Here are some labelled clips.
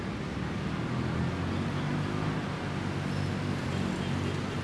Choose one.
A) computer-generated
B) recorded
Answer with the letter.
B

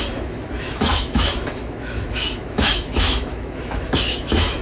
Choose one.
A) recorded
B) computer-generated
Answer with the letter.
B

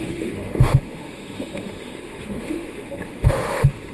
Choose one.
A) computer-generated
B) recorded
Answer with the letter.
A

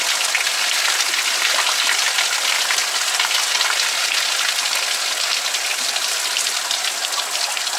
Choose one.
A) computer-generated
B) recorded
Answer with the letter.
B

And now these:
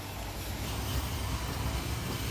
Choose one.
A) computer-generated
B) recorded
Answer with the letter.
B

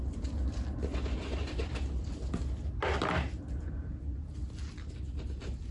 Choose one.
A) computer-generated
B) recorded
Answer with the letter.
B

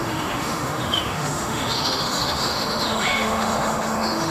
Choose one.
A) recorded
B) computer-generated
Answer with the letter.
B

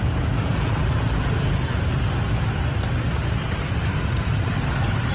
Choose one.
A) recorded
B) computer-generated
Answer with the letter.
A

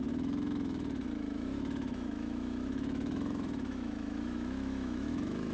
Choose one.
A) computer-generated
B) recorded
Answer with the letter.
A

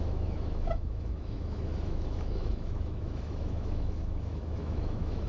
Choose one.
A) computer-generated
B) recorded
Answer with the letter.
A